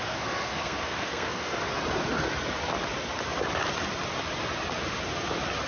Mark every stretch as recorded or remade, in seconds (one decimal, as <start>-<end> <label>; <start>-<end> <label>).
0.0-1.6 remade; 1.6-5.7 recorded